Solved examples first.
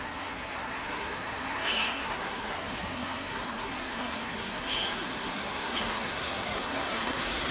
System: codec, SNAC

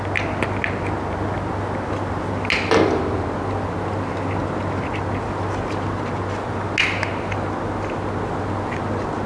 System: none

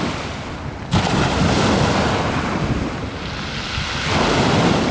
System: none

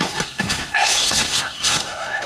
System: codec, SNAC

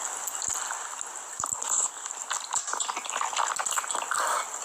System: none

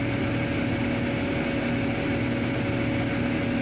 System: none